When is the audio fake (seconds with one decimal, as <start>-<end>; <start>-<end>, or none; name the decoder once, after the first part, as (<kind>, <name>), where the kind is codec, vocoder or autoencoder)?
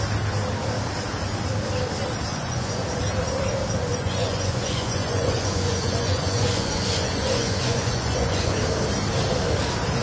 2.3-3.0 (vocoder, Vocos); 3.9-8.6